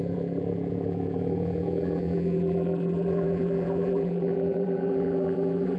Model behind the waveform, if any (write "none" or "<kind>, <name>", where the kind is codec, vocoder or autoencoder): vocoder, BigVGAN v2